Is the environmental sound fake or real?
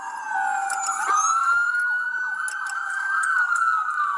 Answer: real